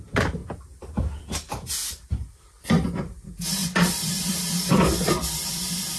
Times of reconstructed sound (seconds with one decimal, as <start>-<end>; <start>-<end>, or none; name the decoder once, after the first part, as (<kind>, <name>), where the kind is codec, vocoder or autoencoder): 1.8-2.5 (vocoder, BigVGAN v2); 3.6-6.0